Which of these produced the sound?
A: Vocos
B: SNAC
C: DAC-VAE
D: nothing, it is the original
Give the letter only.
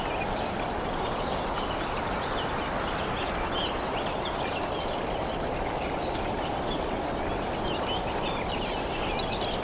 D